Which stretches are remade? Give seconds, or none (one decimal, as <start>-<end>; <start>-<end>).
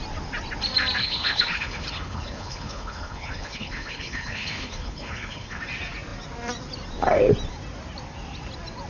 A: 1.0-5.6